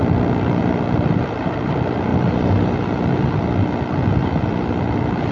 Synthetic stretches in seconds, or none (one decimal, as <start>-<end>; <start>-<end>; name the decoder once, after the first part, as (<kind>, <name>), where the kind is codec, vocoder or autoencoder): 0.6-2.1 (vocoder, BigVGAN v2); 4.7-5.3